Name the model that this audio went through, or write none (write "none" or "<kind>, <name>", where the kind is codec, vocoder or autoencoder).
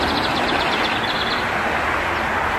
none